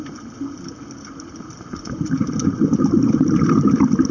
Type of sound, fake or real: real